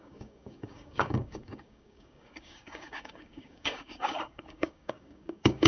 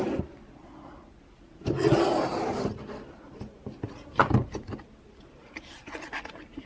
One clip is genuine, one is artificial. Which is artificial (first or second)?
first